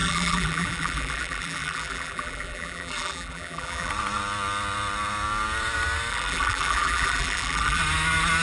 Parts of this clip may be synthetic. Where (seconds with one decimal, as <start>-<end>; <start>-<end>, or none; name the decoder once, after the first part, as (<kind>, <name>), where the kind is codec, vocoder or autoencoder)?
0.0-3.9 (vocoder, BigVGAN v2); 6.1-7.8